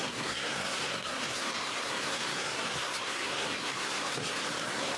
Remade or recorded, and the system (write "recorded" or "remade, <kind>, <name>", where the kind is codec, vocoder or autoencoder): remade, codec, SNAC